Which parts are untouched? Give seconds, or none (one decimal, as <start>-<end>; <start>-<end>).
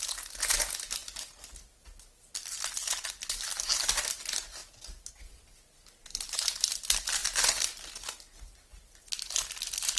0.0-10.0